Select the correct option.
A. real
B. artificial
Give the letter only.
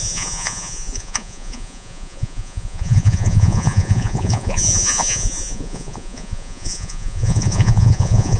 B